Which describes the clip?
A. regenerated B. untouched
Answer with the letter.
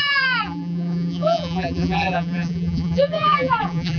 A